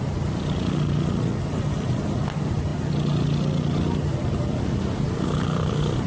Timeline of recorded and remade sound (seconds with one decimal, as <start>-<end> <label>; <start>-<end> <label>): 0.0-6.1 recorded